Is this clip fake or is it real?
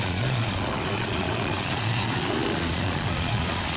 fake